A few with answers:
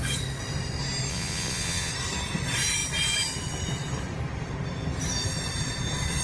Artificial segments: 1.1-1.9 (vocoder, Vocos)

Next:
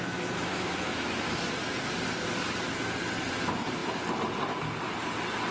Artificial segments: 0.0-1.5 (autoencoder, DAC-VAE)

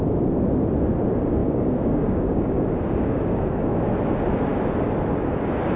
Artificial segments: 1.4-3.9 (codec, DAC)

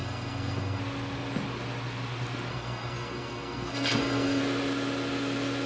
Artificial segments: 0.0-0.8 (codec, SNAC); 2.5-4.4

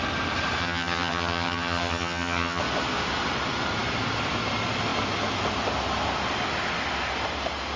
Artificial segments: 0.6-2.6 (vocoder, HiFi-GAN)

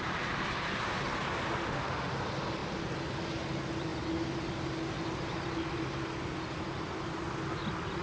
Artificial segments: 1.6-2.1 (autoencoder, DAC-VAE)

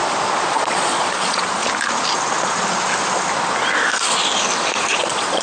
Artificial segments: 0.5-1.6 (vocoder, Vocos); 4.8-5.4